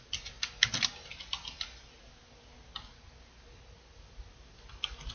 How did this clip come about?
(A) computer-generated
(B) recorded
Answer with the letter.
B